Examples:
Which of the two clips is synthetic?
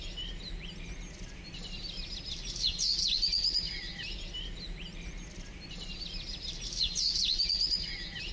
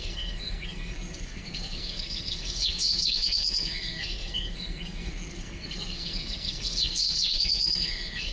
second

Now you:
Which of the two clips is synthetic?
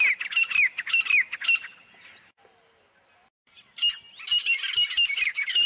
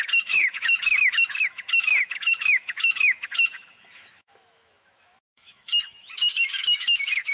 second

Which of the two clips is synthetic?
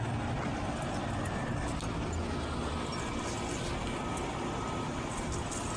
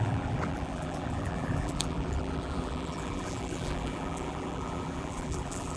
second